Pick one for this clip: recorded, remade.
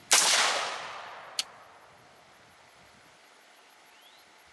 recorded